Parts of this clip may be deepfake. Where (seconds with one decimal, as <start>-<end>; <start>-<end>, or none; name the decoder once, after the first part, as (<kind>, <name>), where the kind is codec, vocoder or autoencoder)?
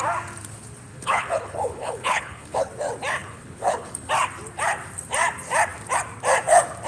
0.9-2.7 (codec, HILCodec); 3.2-4.1